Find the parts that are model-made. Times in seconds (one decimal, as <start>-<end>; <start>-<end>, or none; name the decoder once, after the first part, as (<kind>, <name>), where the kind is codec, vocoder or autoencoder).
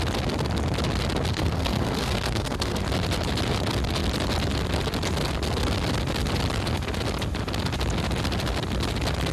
1.3-2.8 (codec, SNAC)